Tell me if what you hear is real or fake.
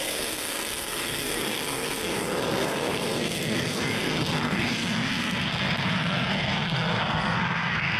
fake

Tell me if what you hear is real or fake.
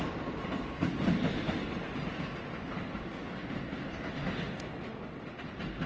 real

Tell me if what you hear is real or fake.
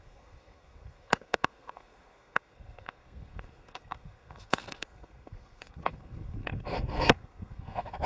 fake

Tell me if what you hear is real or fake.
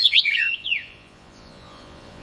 fake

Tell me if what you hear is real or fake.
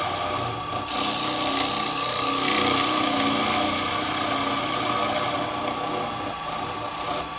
real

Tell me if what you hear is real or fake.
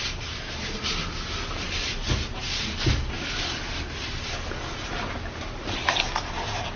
real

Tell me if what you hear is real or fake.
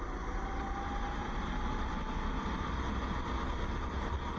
real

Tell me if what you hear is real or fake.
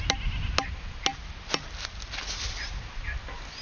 real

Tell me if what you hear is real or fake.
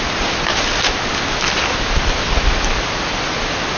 real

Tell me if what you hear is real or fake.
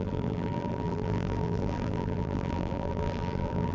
fake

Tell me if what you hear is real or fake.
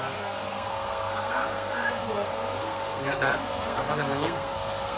fake